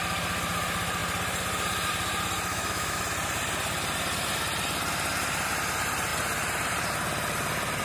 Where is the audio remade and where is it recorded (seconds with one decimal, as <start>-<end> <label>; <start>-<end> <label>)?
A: 0.0-2.5 recorded; 2.5-3.0 remade; 3.0-7.8 recorded